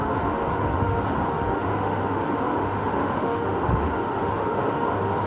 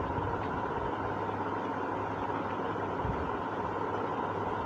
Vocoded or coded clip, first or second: first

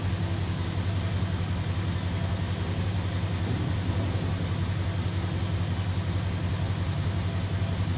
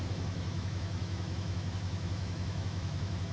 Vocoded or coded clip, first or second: second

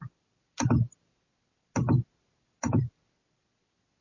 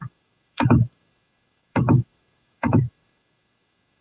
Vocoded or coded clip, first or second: second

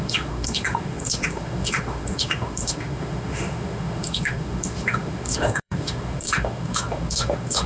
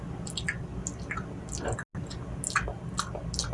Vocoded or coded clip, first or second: first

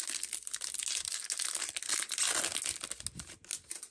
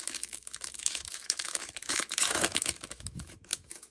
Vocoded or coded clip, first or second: second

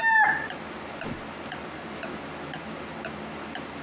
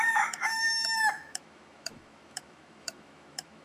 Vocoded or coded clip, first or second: second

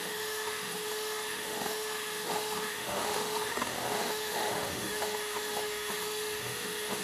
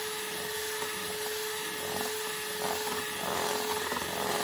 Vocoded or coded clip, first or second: first